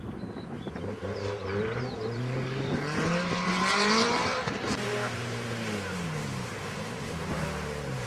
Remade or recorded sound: remade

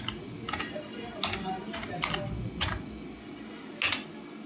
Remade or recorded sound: recorded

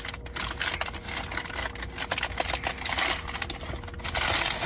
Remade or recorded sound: recorded